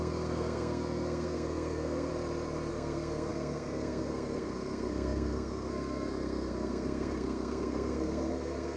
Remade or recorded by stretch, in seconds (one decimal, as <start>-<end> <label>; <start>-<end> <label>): 0.0-2.1 remade; 2.1-2.7 recorded; 2.7-8.8 remade